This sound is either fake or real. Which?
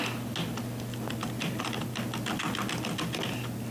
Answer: real